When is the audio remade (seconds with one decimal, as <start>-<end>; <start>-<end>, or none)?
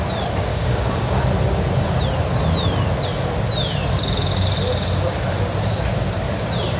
0.5-1.2